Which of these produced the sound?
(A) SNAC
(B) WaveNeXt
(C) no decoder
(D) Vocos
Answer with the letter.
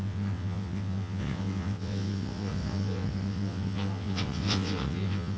B